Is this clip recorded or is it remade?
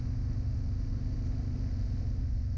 remade